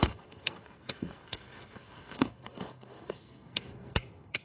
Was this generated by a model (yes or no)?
yes